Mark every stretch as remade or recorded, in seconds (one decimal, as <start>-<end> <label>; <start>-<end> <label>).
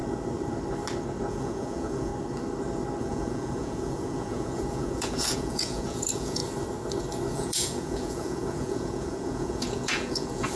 0.0-1.3 recorded; 1.3-2.1 remade; 2.1-3.0 recorded; 3.0-6.4 remade; 6.4-7.3 recorded; 7.3-10.6 remade